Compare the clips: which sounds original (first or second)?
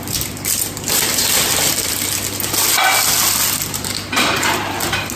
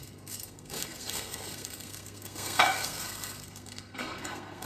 first